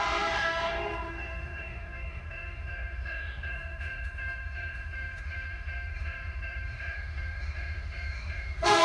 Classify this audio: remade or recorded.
remade